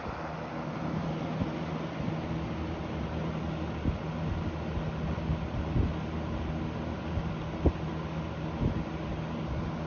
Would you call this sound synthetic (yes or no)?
no